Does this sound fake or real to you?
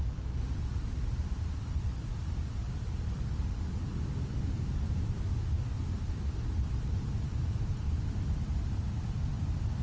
real